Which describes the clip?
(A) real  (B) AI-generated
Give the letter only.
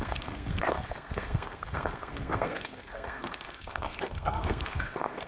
B